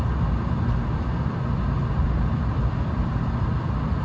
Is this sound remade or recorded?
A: recorded